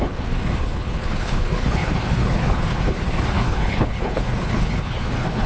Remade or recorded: remade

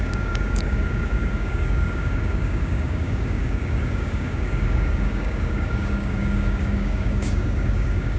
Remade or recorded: remade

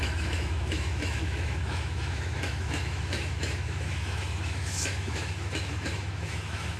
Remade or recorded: remade